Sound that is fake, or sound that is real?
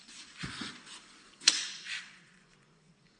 fake